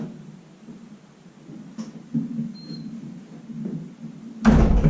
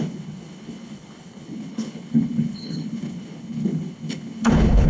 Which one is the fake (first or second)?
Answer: second